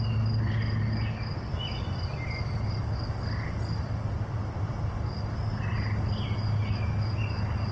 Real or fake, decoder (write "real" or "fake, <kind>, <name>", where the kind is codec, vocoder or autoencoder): real